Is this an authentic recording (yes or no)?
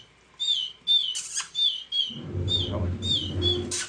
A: yes